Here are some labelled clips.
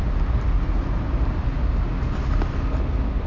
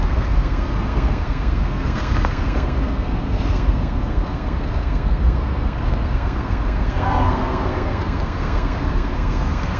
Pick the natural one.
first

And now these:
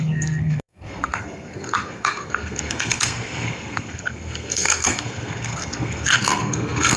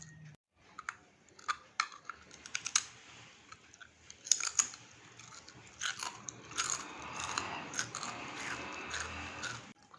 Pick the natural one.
second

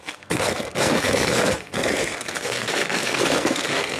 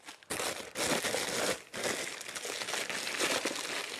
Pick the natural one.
second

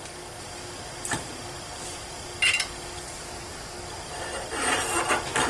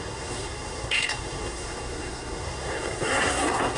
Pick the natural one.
first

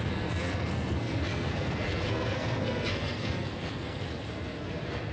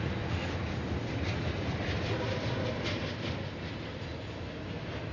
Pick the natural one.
second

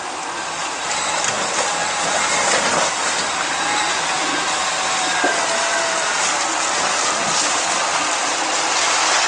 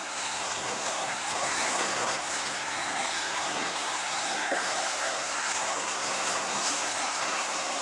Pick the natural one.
first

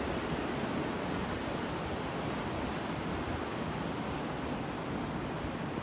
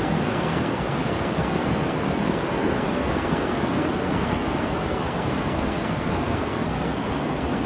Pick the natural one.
first